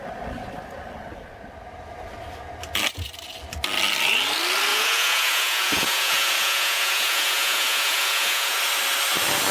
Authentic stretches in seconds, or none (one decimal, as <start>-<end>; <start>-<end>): 0.0-4.7; 8.6-9.5

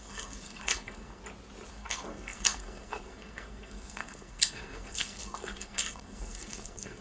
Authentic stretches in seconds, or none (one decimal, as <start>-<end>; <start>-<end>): 1.2-1.7